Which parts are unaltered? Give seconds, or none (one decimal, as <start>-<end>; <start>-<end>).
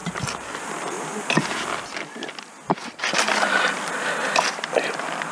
0.0-0.7; 1.1-4.3